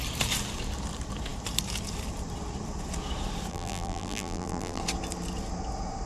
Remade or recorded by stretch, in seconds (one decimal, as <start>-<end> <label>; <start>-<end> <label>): 0.0-3.5 recorded; 3.5-4.8 remade; 4.8-6.1 recorded